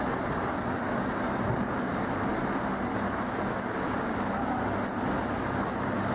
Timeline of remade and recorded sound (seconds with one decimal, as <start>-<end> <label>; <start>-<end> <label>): 0.0-6.1 recorded